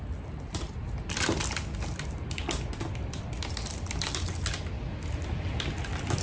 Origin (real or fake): real